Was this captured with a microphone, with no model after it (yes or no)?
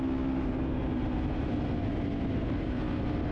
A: yes